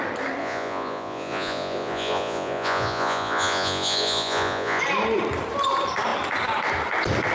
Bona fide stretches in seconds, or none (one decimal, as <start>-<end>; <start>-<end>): 0.0-0.4; 4.8-7.3